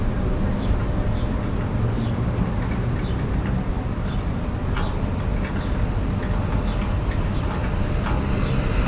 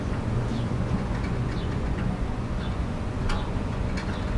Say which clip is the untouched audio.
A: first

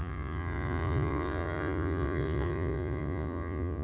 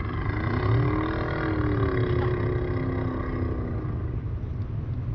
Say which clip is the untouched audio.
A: second